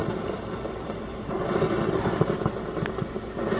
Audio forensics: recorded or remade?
recorded